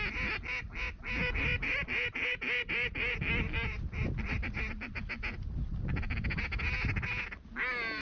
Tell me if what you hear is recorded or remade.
recorded